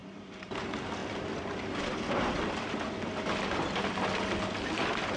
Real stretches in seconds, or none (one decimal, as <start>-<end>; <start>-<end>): 0.6-5.2